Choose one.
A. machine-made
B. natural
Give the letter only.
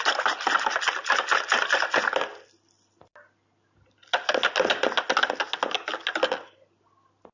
B